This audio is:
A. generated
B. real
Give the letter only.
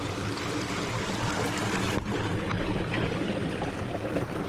B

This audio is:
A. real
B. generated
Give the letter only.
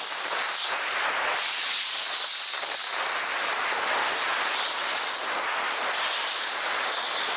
A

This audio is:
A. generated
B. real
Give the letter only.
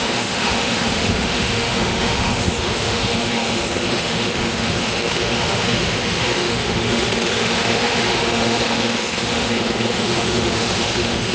A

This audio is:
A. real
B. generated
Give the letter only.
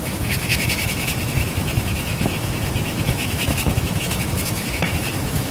B